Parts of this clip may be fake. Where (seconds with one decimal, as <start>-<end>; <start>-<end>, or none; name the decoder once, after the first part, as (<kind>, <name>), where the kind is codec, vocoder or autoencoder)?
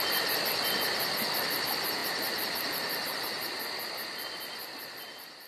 none